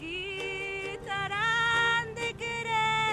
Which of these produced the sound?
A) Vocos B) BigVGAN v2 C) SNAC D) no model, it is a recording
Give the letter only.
D